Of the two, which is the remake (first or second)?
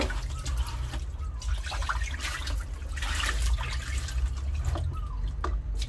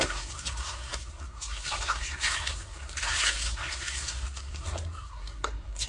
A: second